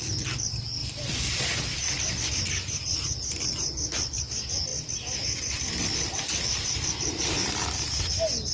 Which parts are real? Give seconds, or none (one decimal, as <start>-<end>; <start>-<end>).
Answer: 0.0-0.8; 2.3-8.5